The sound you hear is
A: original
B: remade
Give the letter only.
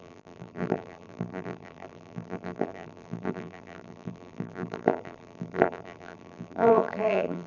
B